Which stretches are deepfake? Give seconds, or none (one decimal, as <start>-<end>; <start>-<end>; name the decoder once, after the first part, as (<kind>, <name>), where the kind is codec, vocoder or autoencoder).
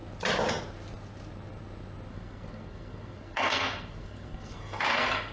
2.1-5.3 (codec, SNAC)